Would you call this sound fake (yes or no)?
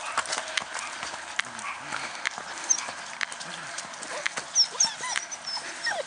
no